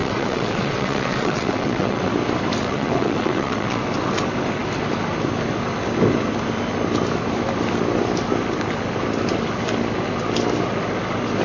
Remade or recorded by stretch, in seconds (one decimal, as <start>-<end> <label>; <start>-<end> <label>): 0.0-2.1 remade; 2.1-2.6 recorded; 2.6-3.8 remade; 3.8-11.4 recorded